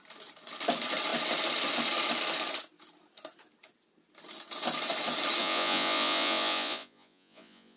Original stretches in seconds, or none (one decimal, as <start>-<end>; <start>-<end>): 0.0-5.4